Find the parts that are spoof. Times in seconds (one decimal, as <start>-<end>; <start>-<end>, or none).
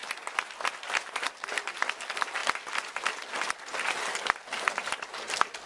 none